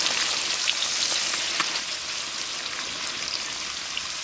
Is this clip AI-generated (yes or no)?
no